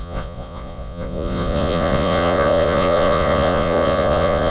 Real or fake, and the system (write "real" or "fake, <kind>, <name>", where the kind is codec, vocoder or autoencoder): fake, vocoder, Vocos